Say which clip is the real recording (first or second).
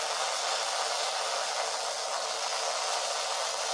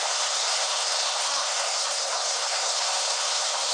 first